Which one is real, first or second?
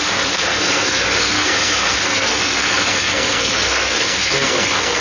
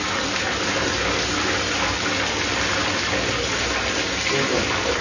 second